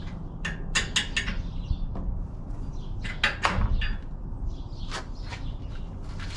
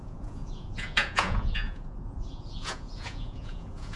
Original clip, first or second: first